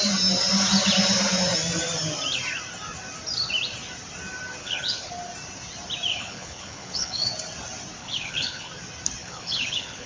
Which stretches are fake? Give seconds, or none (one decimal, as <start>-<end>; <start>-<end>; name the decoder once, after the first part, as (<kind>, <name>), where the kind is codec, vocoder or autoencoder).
4.6-5.1 (codec, HILCodec); 6.1-7.3; 8.0-8.7; 9.2-10.1